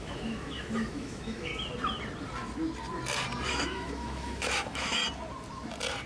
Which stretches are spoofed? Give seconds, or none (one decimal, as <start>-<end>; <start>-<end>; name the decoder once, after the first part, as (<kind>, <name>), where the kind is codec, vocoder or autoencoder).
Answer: 0.0-1.5 (autoencoder, DAC-VAE); 3.5-5.0